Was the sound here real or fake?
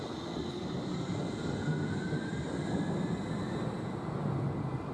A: real